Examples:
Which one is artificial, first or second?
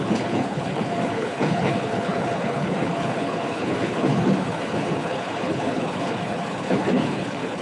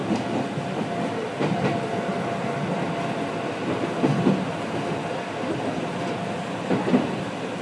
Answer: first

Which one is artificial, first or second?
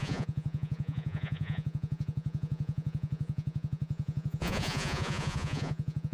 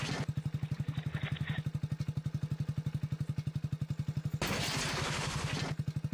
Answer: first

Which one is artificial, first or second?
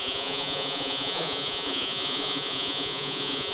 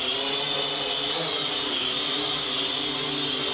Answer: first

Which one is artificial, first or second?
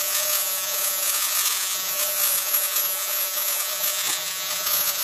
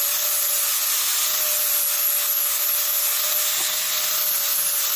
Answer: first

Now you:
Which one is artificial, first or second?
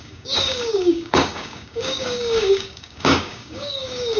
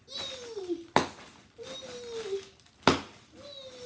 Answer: first